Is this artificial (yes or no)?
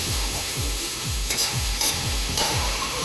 yes